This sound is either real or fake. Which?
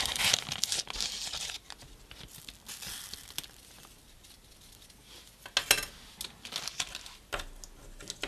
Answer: real